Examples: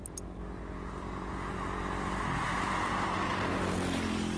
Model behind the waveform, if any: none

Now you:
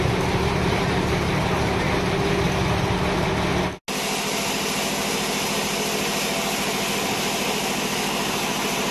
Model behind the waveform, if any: none